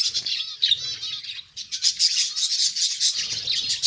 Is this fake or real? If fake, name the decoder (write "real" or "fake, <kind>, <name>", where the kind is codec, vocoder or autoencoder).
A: real